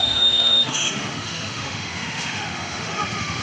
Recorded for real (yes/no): no